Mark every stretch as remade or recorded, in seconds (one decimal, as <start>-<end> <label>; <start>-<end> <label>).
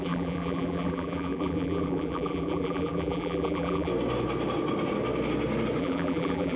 0.0-3.9 remade; 3.9-5.8 recorded; 5.8-6.6 remade